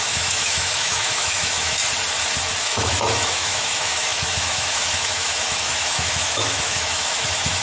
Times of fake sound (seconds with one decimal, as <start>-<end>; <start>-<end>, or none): 0.0-1.8; 2.6-7.6